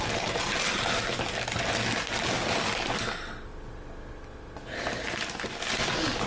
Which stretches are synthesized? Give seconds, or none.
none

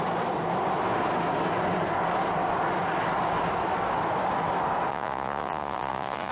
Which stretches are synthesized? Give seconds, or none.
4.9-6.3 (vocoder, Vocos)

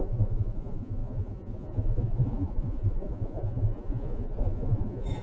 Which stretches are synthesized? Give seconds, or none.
0.0-5.2 (vocoder, Vocos)